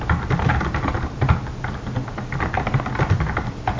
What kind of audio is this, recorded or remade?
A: recorded